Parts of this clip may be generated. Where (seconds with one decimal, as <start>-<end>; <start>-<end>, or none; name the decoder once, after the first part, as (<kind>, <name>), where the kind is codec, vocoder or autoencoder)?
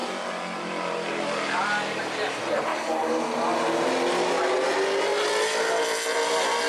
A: 0.0-2.4 (vocoder, BigVGAN v2); 5.1-5.7